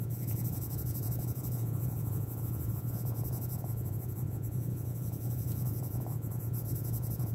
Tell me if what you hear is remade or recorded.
remade